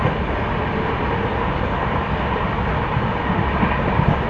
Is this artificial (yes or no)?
no